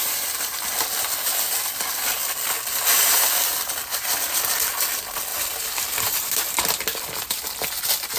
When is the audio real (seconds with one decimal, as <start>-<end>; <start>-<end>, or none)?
0.0-2.9; 4.7-5.3; 6.6-8.2